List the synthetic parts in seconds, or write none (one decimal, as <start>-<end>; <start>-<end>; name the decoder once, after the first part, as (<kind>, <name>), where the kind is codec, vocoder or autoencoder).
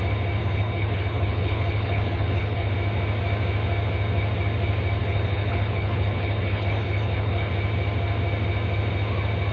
0.4-2.7 (codec, HILCodec); 5.0-7.5